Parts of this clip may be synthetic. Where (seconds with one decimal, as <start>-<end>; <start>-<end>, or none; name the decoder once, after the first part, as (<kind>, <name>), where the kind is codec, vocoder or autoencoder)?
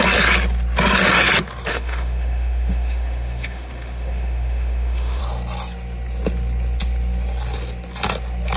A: 1.7-5.2 (autoencoder, DAC-VAE)